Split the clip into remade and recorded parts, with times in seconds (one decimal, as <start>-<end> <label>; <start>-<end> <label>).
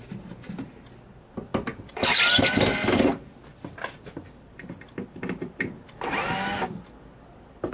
0.0-7.7 recorded